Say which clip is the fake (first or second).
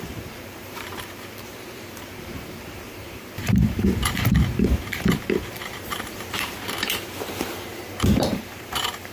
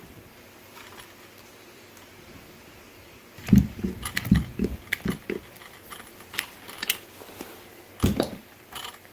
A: first